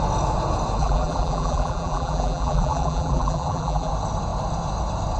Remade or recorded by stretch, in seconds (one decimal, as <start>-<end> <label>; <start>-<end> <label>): 0.0-0.8 recorded; 0.8-3.9 remade; 3.9-5.2 recorded